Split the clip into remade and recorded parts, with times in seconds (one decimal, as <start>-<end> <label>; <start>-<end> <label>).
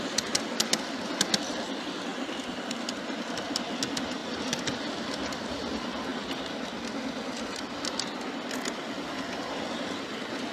0.0-10.5 recorded